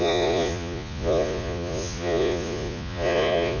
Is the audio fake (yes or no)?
yes